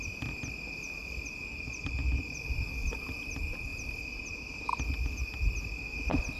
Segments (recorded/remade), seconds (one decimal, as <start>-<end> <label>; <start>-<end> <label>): 0.0-6.4 recorded